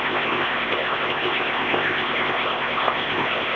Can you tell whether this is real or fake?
fake